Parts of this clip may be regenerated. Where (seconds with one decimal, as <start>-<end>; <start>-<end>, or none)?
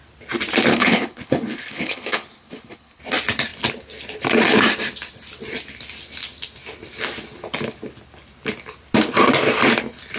0.7-3.0